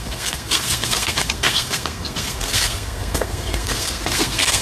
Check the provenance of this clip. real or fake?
fake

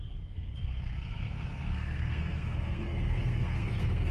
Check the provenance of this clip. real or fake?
fake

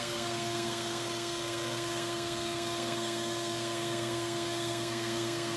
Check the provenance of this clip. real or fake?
fake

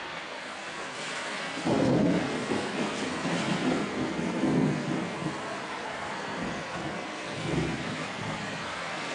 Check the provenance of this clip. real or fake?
fake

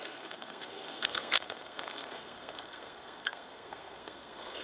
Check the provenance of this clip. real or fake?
fake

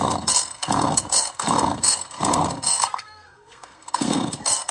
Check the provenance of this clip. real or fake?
fake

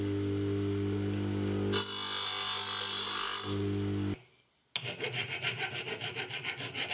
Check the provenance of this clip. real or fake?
real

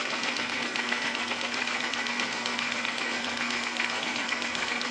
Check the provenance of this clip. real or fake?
fake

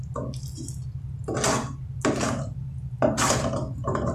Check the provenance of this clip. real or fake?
real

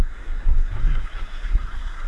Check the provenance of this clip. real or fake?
fake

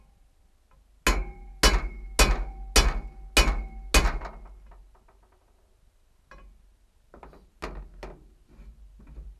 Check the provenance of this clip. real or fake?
real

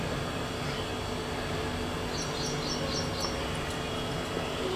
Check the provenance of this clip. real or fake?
real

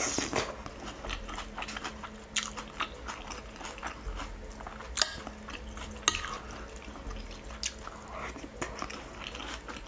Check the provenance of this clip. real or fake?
real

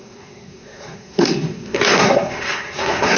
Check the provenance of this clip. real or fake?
fake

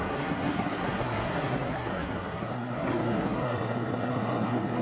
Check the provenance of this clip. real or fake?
fake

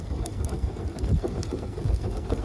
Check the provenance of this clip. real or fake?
fake